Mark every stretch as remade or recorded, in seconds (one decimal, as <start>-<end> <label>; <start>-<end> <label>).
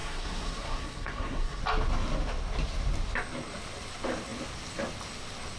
0.0-1.6 remade; 1.6-5.6 recorded